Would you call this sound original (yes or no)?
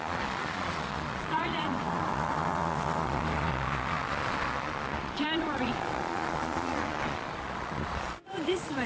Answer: no